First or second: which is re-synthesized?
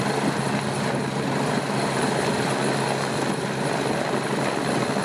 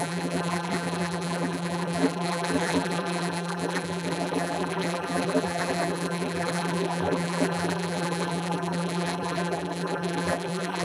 second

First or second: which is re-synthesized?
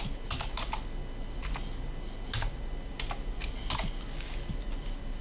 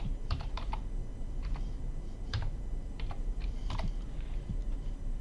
second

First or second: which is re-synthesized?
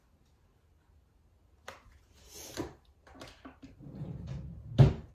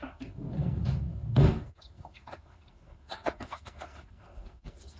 second